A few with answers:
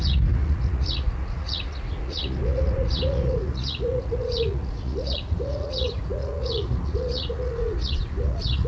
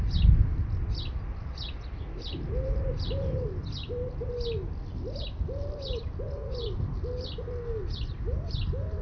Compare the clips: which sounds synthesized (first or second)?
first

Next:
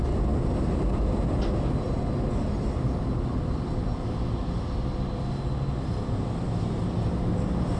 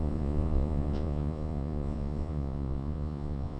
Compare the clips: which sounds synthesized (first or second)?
second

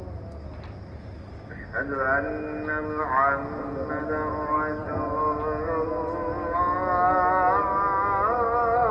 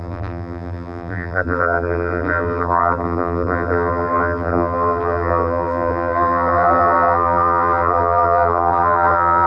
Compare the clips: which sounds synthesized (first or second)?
second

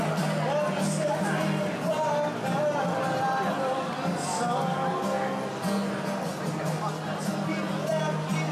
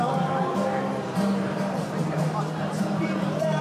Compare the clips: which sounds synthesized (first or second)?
second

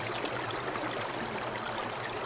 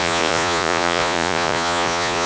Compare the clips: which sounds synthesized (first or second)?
second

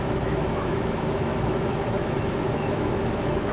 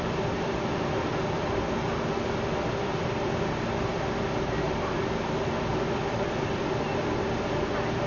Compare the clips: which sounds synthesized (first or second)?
first